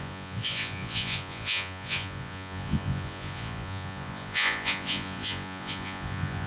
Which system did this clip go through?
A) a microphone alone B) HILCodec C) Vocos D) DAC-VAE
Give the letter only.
C